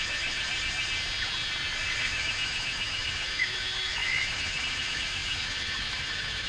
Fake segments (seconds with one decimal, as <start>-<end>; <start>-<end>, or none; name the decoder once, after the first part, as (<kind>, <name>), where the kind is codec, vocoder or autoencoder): 0.0-0.5 (autoencoder, DAC-VAE); 2.0-6.5